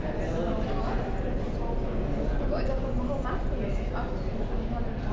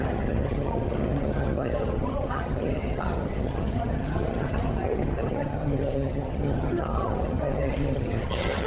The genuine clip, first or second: first